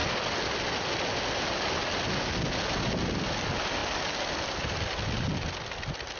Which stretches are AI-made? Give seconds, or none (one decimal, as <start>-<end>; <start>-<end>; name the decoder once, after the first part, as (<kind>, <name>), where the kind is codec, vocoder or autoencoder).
none